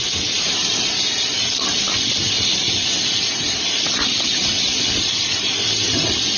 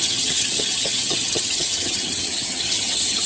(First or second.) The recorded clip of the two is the first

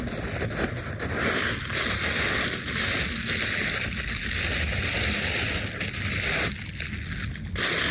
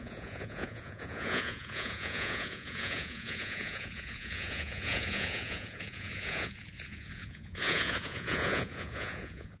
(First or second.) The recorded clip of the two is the first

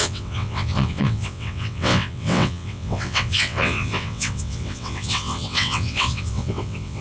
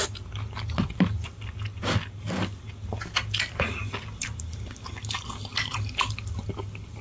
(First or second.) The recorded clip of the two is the second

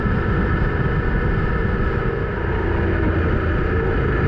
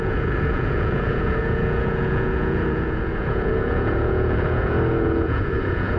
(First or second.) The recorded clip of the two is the first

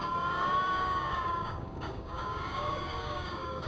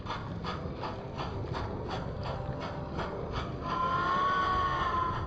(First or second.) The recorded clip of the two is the second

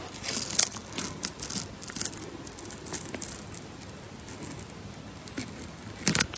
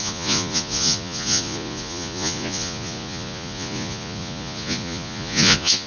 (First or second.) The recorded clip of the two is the first